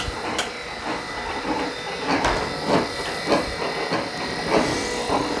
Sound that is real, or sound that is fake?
real